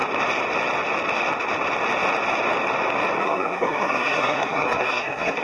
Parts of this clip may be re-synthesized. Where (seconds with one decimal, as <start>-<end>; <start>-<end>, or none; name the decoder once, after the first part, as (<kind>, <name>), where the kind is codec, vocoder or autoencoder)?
3.2-5.4 (codec, SNAC)